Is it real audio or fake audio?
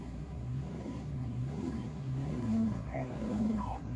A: fake